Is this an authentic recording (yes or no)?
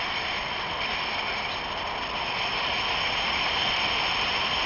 yes